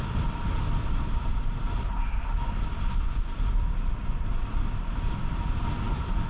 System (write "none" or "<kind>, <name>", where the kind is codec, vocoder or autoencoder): none